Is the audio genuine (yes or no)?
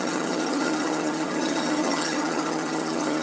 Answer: no